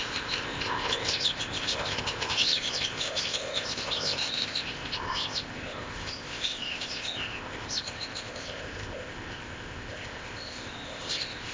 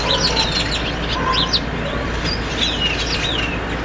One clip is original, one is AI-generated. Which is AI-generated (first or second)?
first